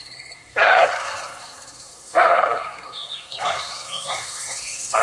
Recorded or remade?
remade